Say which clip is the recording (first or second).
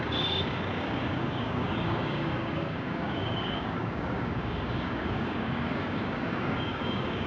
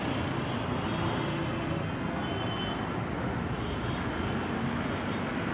second